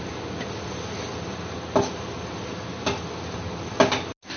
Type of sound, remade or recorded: recorded